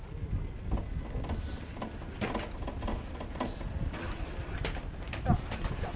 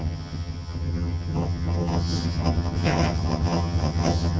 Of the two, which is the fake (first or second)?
second